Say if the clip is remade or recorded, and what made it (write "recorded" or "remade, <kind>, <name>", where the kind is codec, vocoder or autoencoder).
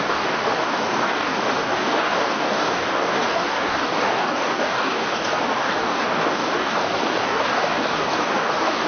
remade, codec, DAC